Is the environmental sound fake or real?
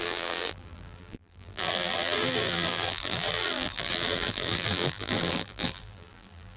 fake